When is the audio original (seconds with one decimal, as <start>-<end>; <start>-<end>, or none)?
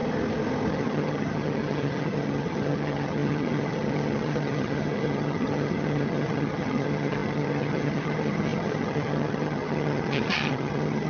0.0-0.7